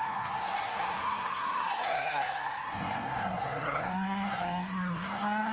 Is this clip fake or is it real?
fake